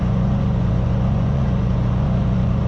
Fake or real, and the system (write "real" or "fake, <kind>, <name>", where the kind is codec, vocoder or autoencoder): fake, vocoder, Vocos